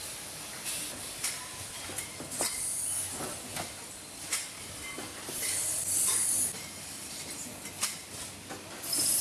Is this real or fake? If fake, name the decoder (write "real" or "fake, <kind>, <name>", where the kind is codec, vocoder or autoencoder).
real